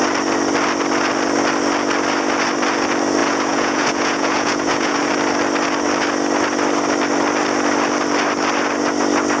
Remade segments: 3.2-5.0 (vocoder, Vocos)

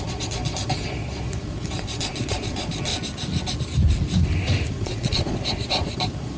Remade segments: 0.0-2.9 (vocoder, Vocos); 4.7-6.4

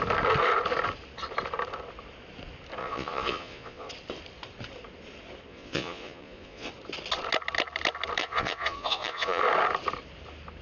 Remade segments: 2.8-3.9 (vocoder, Vocos); 5.5-6.7; 8.2-9.4

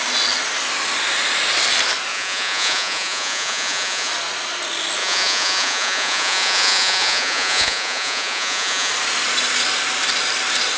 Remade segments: 2.1-4.1 (vocoder, Vocos); 5.0-8.9